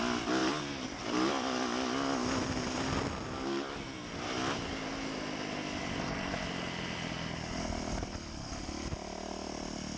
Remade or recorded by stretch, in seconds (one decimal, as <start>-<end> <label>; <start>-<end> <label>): 0.0-10.0 recorded

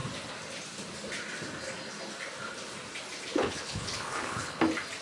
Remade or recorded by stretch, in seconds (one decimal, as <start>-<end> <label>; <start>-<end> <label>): 0.0-3.3 recorded; 3.3-4.6 remade; 4.6-5.0 recorded

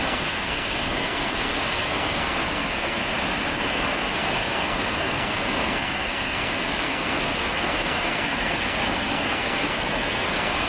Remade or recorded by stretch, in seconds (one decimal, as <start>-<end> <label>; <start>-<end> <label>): 0.0-3.0 remade; 3.0-3.5 recorded; 3.5-10.7 remade

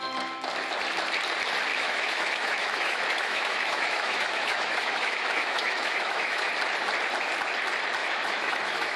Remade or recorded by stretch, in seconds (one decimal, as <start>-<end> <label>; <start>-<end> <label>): 0.0-1.7 recorded; 1.7-6.5 remade; 6.5-8.0 recorded; 8.0-9.0 remade

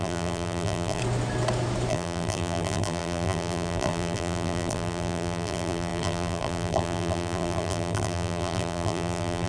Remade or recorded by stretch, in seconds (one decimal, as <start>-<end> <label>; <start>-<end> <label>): 0.0-1.0 remade; 1.0-1.9 recorded; 1.9-9.5 remade

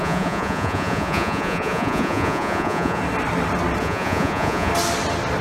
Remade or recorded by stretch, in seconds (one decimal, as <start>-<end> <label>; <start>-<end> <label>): 0.0-3.0 remade; 3.0-3.8 recorded; 3.8-4.7 remade; 4.7-5.4 recorded

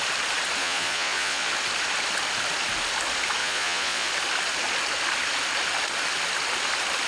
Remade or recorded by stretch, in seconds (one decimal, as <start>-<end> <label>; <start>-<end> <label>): 0.0-0.6 recorded; 0.6-1.5 remade; 1.5-3.4 recorded; 3.4-4.1 remade; 4.1-7.1 recorded